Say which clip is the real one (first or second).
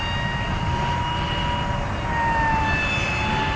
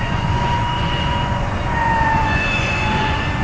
first